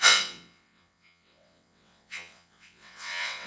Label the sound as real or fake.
fake